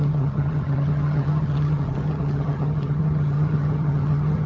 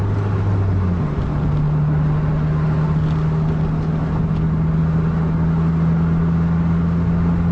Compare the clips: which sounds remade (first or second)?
first